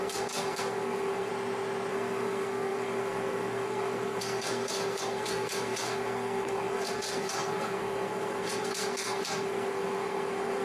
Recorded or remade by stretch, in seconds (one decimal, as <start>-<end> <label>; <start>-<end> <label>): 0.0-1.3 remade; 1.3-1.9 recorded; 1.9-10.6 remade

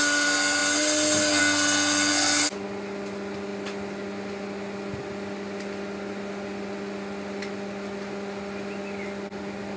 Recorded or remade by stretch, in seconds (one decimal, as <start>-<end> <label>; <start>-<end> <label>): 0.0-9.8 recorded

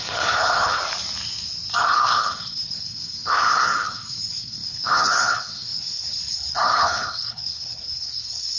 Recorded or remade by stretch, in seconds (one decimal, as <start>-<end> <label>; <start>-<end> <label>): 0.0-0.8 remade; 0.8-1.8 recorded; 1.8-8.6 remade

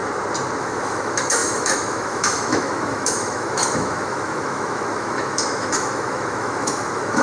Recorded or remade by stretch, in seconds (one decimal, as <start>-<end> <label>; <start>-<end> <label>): 0.0-0.6 recorded; 0.6-7.2 remade

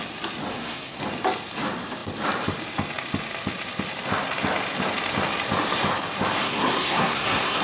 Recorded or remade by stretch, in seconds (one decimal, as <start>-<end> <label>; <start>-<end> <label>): 0.0-0.5 recorded; 0.5-1.0 remade; 1.0-6.4 recorded; 6.4-7.6 remade